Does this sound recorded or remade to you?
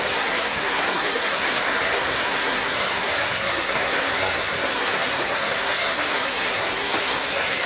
remade